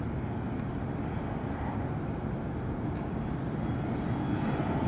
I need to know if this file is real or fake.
real